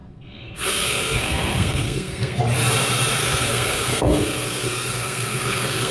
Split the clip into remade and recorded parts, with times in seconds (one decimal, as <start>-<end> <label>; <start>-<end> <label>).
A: 0.0-2.4 remade; 2.4-3.2 recorded; 3.2-5.9 remade